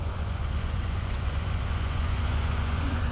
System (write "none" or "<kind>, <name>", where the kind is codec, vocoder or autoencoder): vocoder, Vocos